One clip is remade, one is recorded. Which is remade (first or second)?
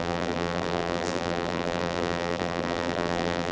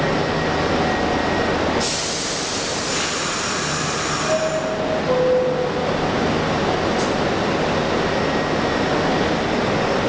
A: first